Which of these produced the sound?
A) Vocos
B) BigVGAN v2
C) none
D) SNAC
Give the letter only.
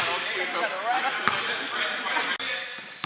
C